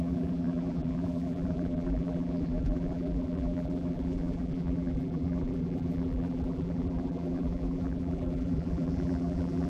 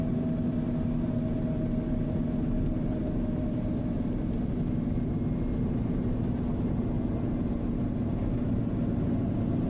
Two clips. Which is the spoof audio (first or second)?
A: first